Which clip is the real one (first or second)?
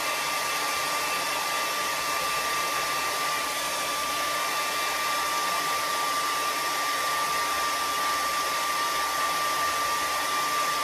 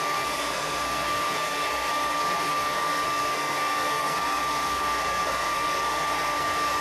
first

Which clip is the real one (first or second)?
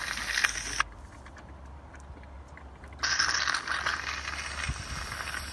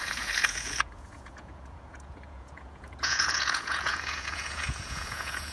first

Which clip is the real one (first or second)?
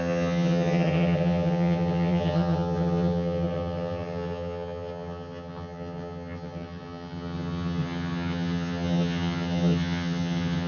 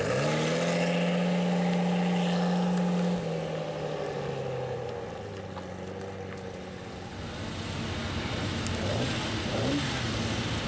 second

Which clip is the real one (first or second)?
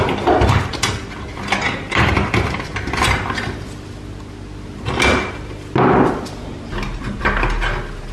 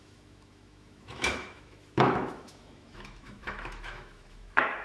first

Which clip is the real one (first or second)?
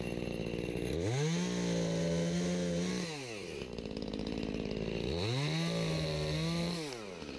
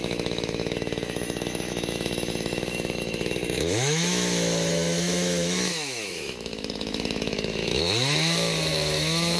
first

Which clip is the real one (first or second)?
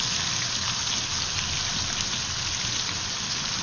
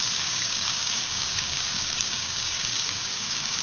first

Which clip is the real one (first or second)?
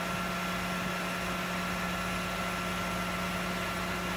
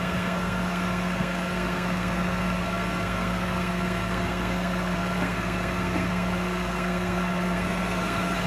first